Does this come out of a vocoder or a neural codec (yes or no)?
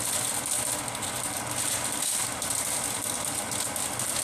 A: no